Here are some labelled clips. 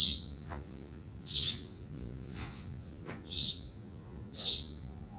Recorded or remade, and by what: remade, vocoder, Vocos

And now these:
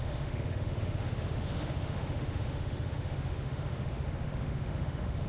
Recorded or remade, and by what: remade, autoencoder, DAC-VAE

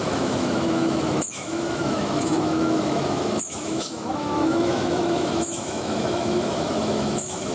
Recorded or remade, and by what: remade, autoencoder, DAC-VAE